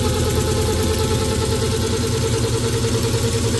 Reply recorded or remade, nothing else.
recorded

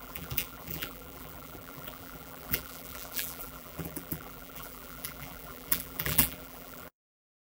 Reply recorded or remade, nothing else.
remade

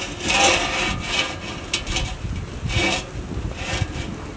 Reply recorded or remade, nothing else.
recorded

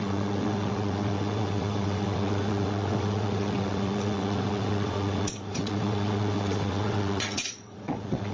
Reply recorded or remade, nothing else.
remade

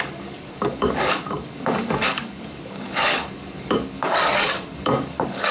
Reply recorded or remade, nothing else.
remade